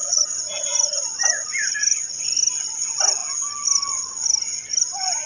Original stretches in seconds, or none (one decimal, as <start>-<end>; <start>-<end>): 2.2-5.3